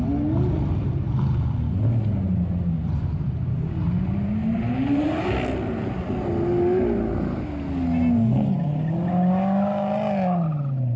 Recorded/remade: recorded